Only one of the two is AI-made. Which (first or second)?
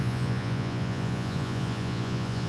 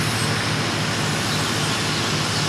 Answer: first